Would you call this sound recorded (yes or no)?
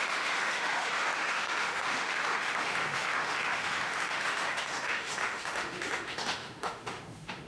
no